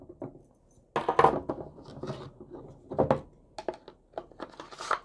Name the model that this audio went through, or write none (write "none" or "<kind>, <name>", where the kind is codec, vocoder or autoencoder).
none